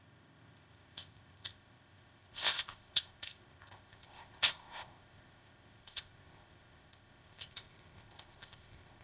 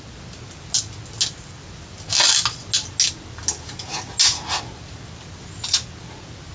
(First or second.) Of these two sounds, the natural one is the second